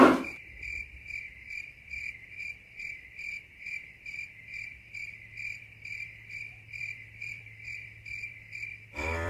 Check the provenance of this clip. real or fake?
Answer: fake